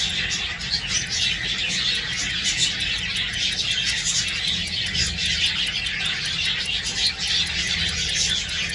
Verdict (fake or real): real